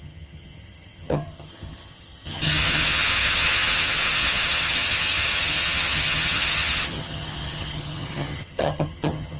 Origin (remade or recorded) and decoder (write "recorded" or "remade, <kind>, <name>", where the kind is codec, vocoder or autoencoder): remade, vocoder, HiFi-GAN